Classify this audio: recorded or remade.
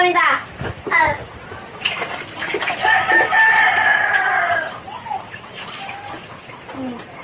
remade